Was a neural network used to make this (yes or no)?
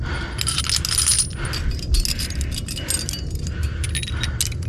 no